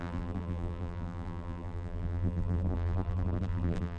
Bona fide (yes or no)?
no